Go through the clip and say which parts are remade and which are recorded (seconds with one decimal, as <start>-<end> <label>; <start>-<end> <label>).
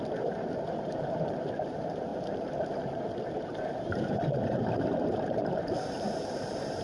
0.0-6.8 remade